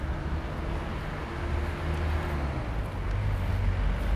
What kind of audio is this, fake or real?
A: real